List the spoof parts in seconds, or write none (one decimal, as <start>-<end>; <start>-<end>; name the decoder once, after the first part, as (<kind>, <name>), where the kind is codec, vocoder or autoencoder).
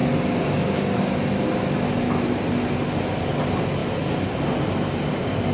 none